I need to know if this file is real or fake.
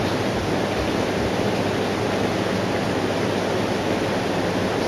real